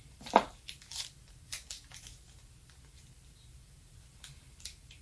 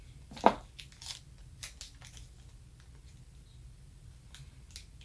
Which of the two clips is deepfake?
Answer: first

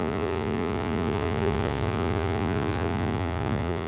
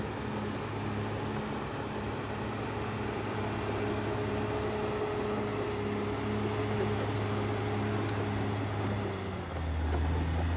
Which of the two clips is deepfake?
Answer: first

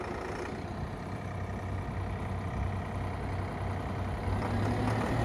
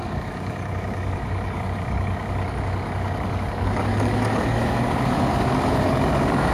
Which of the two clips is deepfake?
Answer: second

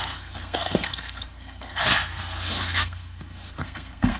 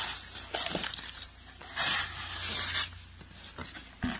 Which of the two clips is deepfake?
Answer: first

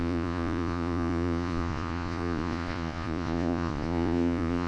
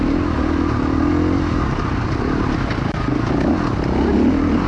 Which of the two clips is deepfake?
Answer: first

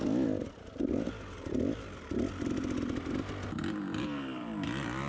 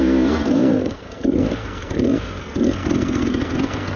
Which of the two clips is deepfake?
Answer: second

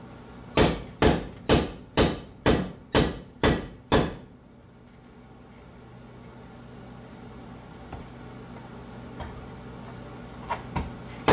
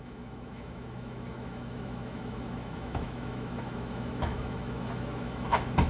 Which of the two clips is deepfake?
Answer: second